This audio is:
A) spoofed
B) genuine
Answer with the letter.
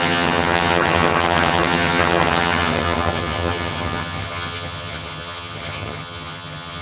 A